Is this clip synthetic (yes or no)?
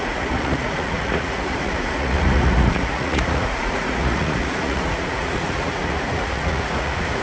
yes